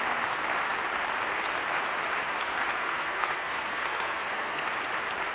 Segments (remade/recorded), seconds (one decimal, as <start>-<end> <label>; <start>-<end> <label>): 0.0-2.7 recorded; 2.7-4.7 remade; 4.7-5.3 recorded